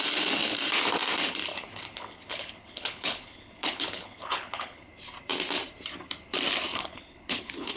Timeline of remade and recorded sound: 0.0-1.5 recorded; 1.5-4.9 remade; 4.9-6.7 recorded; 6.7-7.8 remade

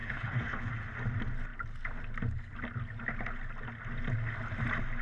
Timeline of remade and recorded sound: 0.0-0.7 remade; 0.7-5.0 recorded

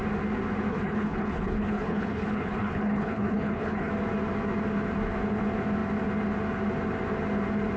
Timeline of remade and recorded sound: 0.0-0.7 recorded; 0.7-3.9 remade; 3.9-7.8 recorded